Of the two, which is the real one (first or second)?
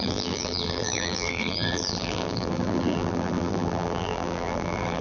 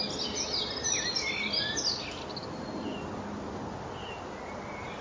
second